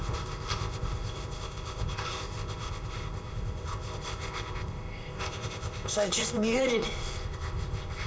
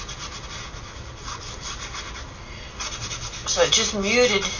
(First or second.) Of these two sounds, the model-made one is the first